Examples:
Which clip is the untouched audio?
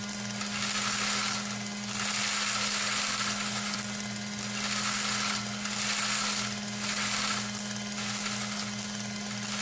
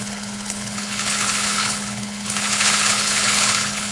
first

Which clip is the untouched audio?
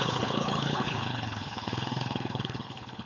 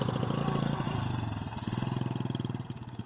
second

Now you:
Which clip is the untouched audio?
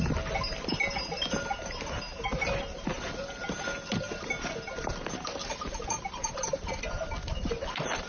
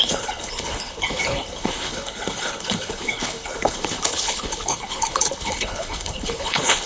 first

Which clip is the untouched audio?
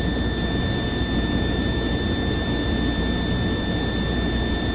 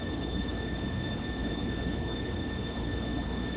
first